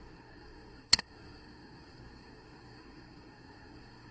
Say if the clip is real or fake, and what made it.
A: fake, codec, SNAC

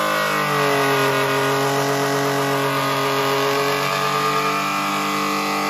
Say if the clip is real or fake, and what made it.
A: real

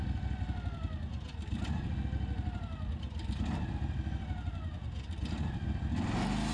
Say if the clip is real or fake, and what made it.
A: real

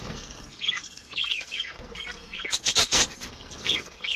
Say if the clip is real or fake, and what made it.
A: fake, codec, SNAC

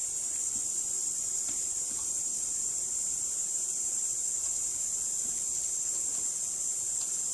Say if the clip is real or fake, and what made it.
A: real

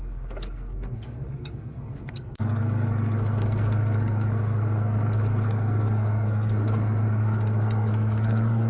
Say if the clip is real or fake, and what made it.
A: fake, codec, SNAC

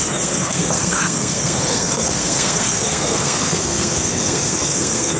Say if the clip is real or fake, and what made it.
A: fake, codec, SNAC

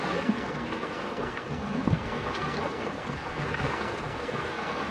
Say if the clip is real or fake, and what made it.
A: fake, codec, SNAC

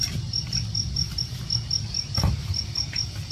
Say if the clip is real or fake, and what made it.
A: real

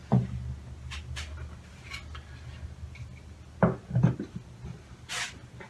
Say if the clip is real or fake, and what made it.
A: real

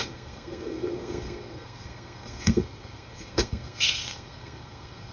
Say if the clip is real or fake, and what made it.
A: fake, codec, SNAC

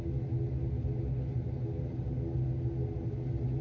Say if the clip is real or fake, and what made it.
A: real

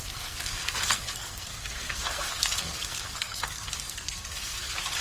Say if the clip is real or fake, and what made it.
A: fake, codec, SNAC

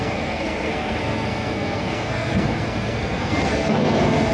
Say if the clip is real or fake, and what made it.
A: fake, codec, SNAC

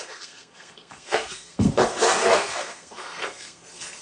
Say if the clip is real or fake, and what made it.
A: fake, codec, SNAC